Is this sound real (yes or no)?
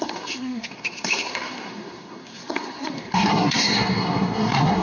no